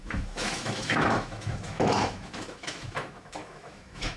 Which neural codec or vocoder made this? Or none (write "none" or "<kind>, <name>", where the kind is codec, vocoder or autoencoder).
autoencoder, DAC-VAE